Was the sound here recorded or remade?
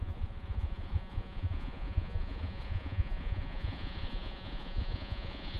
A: remade